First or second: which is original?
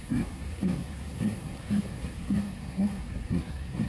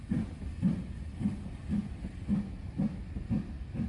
second